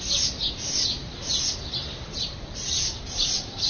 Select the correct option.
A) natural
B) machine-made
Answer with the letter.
B